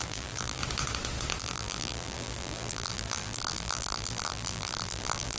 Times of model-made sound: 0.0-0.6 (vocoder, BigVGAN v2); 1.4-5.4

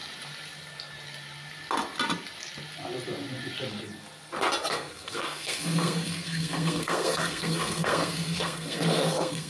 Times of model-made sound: 4.7-9.5 (codec, SNAC)

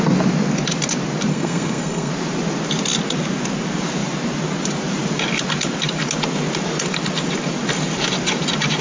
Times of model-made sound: 1.3-2.1 (codec, SNAC)

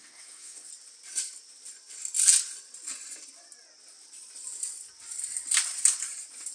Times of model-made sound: 0.0-0.7 (codec, SNAC)